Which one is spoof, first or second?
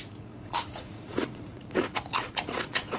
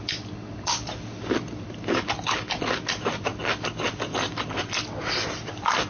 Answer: first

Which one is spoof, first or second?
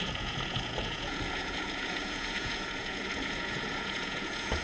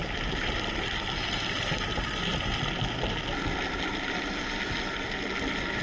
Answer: first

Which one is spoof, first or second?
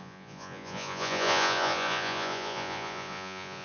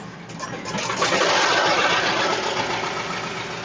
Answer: first